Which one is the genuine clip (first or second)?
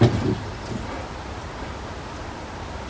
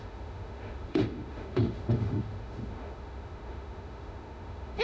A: first